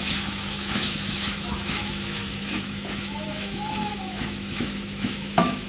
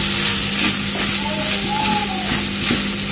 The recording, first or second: second